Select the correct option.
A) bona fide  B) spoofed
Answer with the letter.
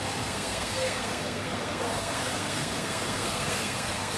B